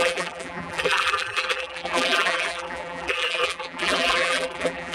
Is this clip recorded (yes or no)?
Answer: no